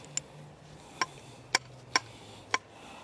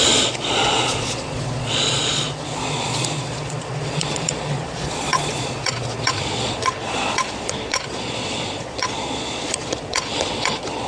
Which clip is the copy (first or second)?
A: second